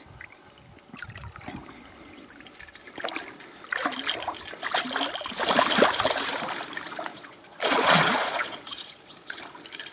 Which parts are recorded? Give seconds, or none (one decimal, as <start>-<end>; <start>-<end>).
0.0-7.1; 9.4-9.9